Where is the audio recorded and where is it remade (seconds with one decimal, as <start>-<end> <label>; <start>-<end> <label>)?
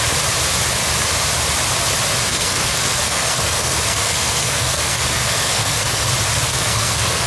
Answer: 0.0-2.3 recorded; 2.3-6.1 remade; 6.1-6.5 recorded; 6.5-7.3 remade